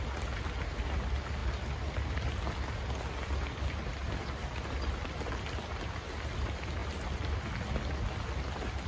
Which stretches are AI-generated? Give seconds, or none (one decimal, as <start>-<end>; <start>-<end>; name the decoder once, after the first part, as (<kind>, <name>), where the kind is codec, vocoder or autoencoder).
none